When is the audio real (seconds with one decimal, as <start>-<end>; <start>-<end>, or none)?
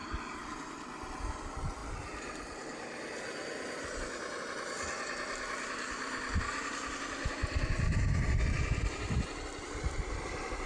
0.0-10.7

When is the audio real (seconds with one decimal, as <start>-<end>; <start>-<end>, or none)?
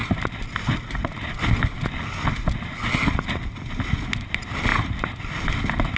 0.0-6.0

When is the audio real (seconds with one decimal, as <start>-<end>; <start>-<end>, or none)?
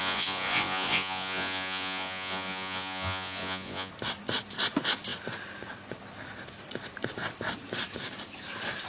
3.9-8.9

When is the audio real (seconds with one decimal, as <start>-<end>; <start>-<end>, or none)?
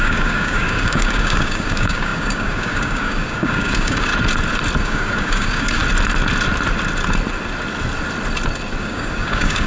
4.1-4.8; 5.8-8.8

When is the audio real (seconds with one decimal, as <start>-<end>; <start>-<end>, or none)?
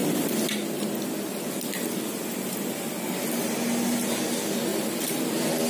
0.0-4.7; 5.3-5.7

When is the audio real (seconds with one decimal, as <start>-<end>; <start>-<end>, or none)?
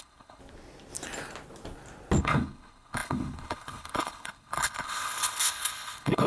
0.4-2.2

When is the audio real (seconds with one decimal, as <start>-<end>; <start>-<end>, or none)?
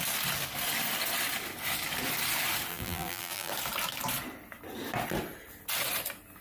0.0-2.7; 3.5-6.4